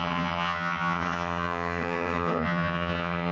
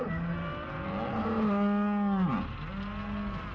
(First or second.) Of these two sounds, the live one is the second